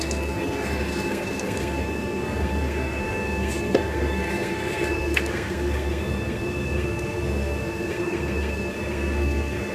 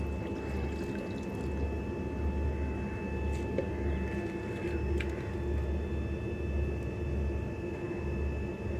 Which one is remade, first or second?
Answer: first